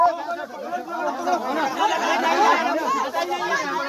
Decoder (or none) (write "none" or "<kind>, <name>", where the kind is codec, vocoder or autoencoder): none